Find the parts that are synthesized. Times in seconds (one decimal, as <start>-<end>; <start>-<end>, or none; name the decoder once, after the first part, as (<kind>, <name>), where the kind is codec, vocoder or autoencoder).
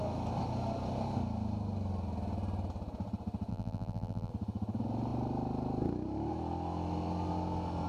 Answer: 3.5-4.3 (vocoder, BigVGAN v2)